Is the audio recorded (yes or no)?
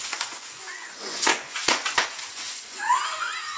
no